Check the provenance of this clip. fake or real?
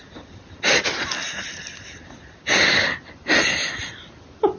real